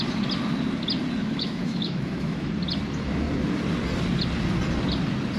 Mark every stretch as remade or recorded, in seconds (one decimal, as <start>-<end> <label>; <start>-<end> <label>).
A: 0.0-1.2 recorded; 1.2-2.5 remade; 2.5-5.4 recorded